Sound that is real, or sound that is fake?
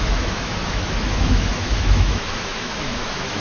fake